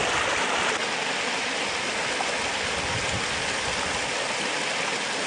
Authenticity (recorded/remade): recorded